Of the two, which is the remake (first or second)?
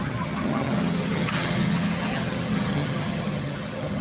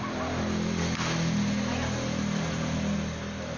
first